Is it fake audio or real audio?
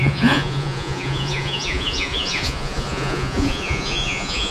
fake